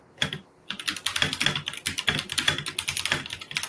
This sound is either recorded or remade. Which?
recorded